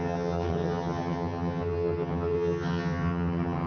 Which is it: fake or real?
fake